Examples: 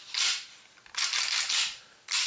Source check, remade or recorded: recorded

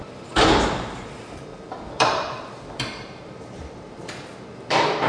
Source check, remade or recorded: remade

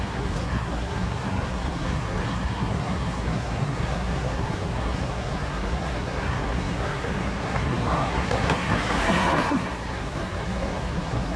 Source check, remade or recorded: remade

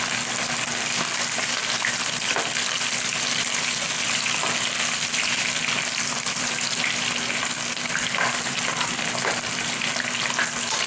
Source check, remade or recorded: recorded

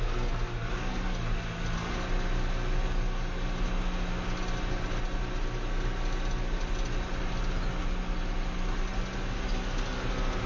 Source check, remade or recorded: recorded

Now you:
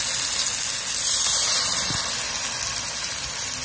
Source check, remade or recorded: recorded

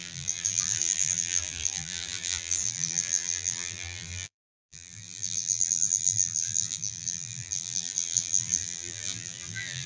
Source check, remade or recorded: remade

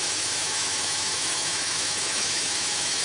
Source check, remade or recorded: remade